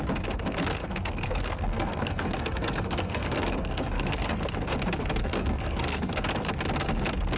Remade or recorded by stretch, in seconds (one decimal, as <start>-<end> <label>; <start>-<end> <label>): 0.0-0.8 recorded; 0.8-4.4 remade; 4.4-5.2 recorded; 5.2-6.1 remade; 6.1-7.4 recorded